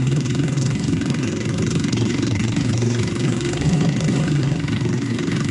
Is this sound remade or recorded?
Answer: remade